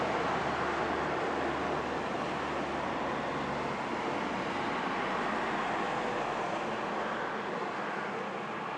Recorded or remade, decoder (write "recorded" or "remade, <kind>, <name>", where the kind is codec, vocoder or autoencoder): recorded